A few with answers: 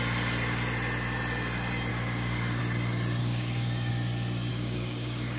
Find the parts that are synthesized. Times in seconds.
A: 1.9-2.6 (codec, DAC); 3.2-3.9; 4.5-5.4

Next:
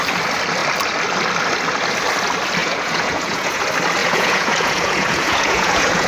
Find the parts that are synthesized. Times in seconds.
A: 2.6-3.6 (vocoder, Vocos); 4.0-6.1